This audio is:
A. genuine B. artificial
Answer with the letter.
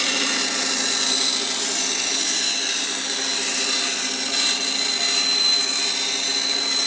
A